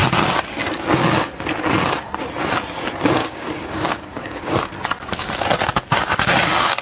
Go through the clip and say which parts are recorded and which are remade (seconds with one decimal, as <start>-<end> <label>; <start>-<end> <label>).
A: 0.0-3.2 recorded; 3.2-4.7 remade; 4.7-6.8 recorded